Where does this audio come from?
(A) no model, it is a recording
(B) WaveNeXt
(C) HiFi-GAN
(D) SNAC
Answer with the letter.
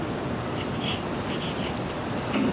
A